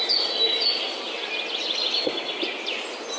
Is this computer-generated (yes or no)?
no